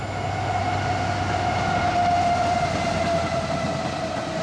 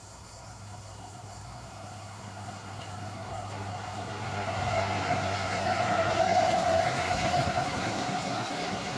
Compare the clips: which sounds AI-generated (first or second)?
second